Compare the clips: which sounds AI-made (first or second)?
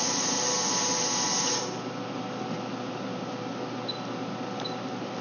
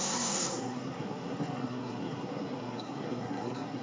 second